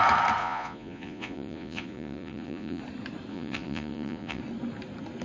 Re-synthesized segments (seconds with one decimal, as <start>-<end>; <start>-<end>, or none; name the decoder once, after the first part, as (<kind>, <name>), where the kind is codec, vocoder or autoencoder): 0.4-2.8 (vocoder, Vocos); 3.3-4.4